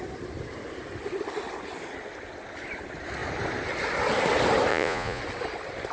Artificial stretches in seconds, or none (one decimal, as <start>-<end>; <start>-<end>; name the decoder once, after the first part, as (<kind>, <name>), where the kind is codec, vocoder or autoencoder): 4.7-5.2 (vocoder, Vocos)